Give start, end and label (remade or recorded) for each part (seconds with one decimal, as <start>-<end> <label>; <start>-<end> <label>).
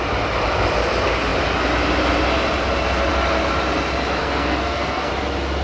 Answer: 0.0-4.2 recorded; 4.2-5.1 remade; 5.1-5.6 recorded